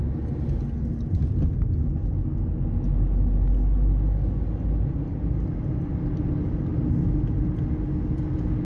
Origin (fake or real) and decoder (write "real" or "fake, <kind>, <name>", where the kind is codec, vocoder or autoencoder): real